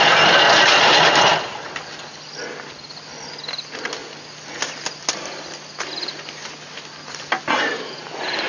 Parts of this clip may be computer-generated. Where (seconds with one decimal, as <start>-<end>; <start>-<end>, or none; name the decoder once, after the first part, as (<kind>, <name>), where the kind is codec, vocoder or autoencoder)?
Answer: none